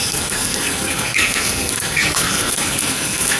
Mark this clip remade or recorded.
remade